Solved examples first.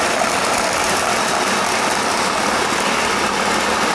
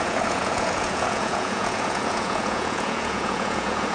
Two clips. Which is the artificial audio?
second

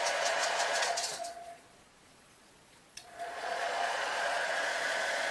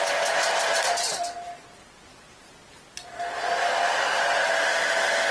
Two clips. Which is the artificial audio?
first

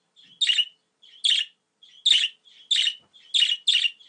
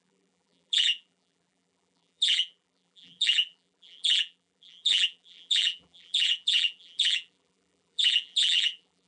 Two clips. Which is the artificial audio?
second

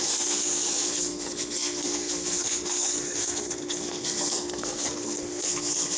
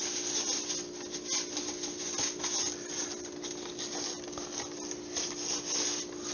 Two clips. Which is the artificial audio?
first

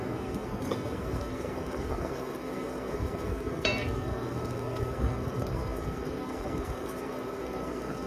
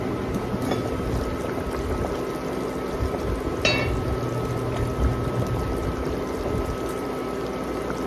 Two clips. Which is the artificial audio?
first